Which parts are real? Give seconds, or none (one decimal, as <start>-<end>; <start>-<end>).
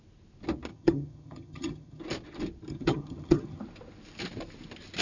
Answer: 0.0-0.7; 2.0-2.7; 3.6-5.0